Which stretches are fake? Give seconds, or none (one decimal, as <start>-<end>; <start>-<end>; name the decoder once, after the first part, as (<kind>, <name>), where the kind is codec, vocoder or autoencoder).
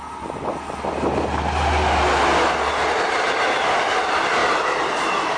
none